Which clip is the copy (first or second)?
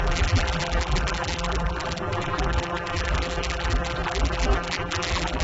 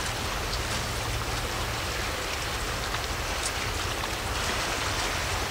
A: first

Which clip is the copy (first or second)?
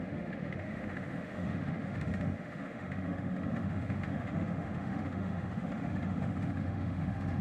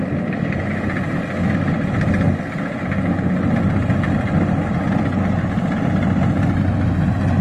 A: first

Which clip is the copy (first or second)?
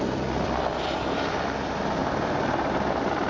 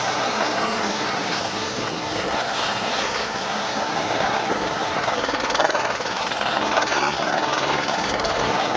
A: second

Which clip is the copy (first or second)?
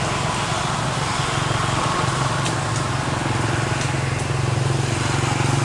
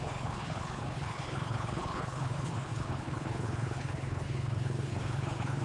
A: second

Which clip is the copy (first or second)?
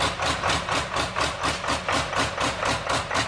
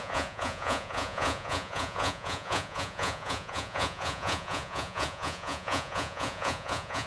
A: second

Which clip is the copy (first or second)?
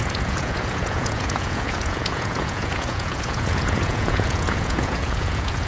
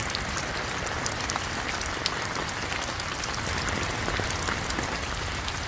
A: first